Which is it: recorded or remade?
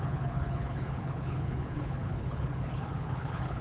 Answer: remade